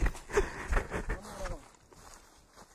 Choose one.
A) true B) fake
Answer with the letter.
A